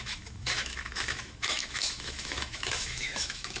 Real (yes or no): no